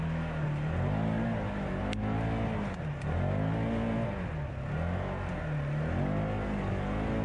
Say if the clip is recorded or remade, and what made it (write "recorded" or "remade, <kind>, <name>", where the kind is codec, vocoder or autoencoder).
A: recorded